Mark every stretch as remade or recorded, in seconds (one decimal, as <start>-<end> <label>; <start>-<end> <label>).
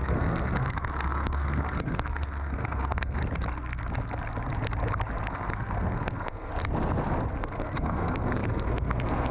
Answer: 0.0-3.2 remade; 3.2-5.3 recorded; 5.3-6.5 remade; 6.5-7.4 recorded; 7.4-9.3 remade